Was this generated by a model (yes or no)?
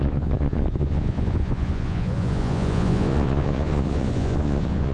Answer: yes